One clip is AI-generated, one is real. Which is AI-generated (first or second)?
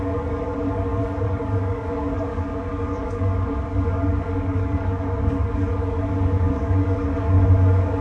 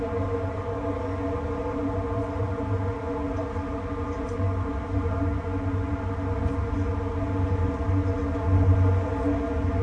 first